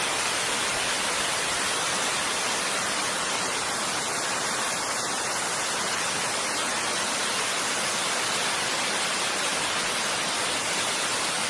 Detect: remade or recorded recorded